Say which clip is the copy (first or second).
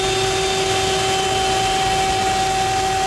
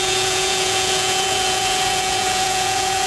second